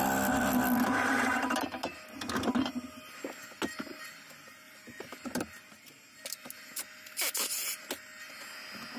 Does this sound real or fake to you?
real